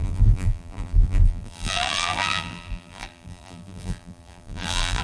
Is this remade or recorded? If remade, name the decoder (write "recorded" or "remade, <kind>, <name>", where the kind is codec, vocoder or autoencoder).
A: remade, vocoder, BigVGAN v2